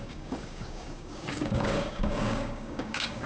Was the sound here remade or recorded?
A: remade